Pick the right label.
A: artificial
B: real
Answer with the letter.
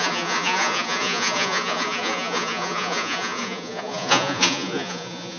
A